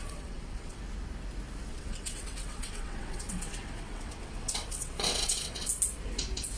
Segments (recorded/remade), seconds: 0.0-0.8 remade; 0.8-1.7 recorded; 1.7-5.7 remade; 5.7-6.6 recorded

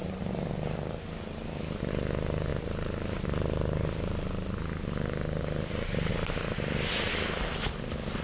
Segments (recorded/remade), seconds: 0.0-1.9 remade; 1.9-2.5 recorded; 2.5-6.1 remade; 6.1-8.2 recorded

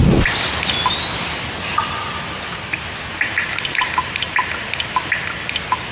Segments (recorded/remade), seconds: 0.0-5.9 recorded